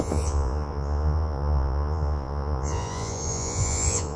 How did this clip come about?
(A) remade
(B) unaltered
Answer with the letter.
A